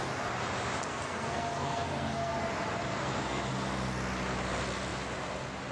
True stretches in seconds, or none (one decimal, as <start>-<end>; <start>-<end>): 0.0-0.9; 2.5-2.9; 3.5-5.7